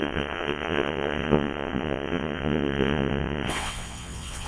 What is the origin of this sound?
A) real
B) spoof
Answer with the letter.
B